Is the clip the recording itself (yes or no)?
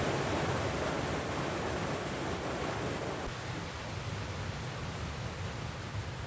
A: yes